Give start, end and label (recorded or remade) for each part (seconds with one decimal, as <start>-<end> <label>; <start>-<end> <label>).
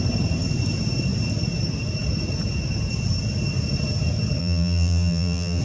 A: 0.0-4.4 recorded; 4.4-5.6 remade